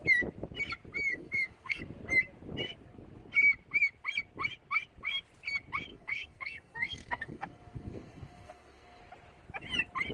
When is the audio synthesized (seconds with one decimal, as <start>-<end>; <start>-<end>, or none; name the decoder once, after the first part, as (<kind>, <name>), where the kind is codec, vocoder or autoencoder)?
1.1-1.8 (codec, SNAC); 5.9-9.0